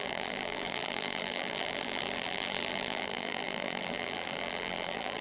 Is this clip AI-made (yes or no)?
yes